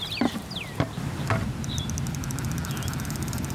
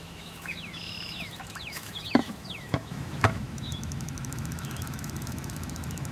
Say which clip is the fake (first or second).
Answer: second